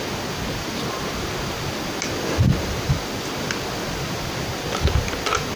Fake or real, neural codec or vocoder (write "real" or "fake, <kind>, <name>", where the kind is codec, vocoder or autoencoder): real